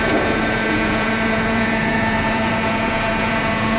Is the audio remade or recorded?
remade